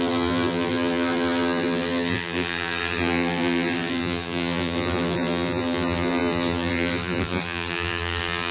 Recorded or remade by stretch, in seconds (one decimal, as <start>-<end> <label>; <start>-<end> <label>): 0.0-8.5 remade